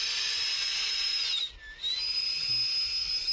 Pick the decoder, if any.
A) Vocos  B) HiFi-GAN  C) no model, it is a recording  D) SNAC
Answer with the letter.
C